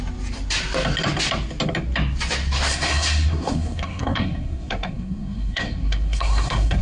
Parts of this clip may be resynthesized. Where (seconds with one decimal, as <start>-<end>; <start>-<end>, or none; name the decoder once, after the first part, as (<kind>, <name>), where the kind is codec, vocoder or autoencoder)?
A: 2.7-6.8 (codec, SNAC)